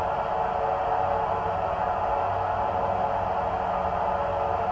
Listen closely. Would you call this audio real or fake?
real